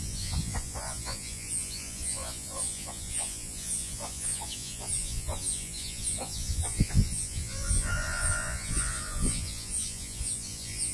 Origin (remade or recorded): remade